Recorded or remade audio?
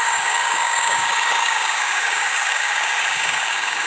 remade